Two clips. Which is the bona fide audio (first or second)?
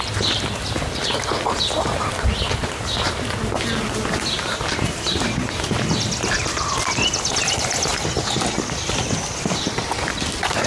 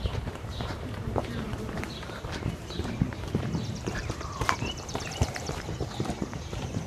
first